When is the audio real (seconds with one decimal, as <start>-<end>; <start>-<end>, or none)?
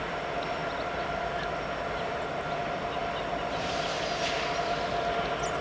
0.0-5.6